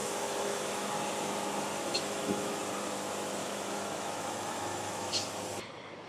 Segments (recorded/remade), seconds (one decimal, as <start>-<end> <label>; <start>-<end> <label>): 0.0-0.9 remade; 0.9-1.9 recorded; 1.9-2.6 remade; 2.6-3.4 recorded; 3.4-5.1 remade; 5.1-6.1 recorded